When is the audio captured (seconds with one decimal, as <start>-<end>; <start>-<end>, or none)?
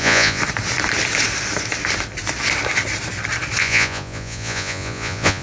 0.4-3.6